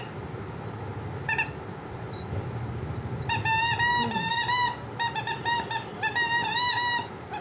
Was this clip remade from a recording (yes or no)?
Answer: no